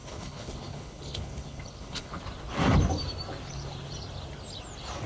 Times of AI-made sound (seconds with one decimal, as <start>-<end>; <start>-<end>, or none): 0.0-2.2